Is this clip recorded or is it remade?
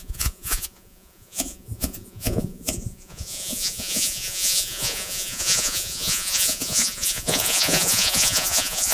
remade